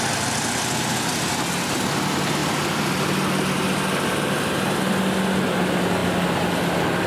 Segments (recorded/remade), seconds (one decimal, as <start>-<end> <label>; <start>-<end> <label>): 0.0-7.1 recorded